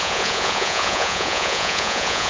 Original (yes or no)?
no